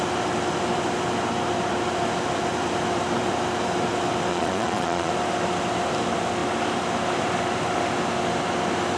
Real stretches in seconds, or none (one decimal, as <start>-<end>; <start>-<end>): 0.0-4.3; 5.1-9.0